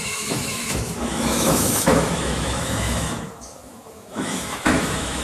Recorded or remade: remade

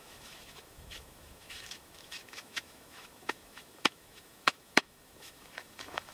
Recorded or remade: remade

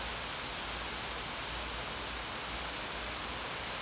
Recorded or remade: recorded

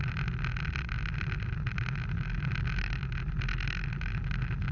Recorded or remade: recorded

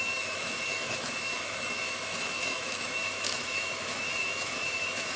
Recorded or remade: remade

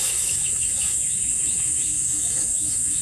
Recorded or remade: remade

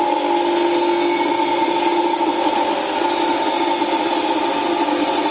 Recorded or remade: recorded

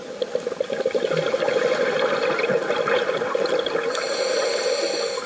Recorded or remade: recorded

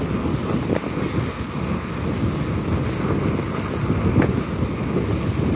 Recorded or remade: recorded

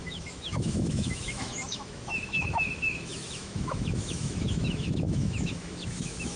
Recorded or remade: remade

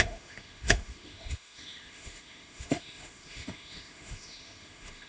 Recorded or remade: remade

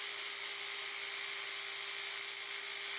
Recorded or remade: recorded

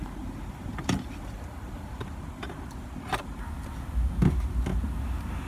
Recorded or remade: recorded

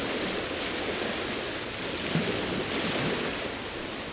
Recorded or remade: recorded